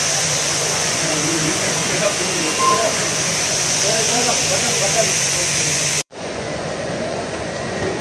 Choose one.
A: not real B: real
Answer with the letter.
A